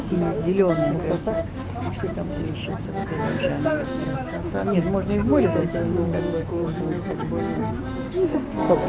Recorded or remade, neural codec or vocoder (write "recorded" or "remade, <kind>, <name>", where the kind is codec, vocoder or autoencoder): remade, codec, DAC